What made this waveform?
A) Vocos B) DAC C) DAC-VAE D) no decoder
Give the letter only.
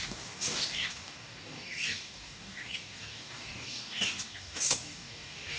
B